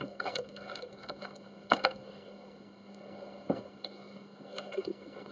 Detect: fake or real fake